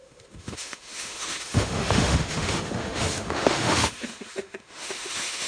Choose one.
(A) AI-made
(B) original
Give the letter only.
A